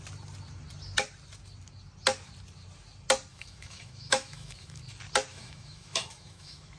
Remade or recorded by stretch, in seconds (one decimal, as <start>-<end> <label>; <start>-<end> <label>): 0.0-3.3 recorded; 3.3-4.8 remade; 4.8-5.3 recorded; 5.3-6.8 remade